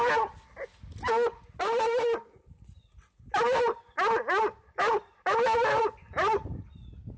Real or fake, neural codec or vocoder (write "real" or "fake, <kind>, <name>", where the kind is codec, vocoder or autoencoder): real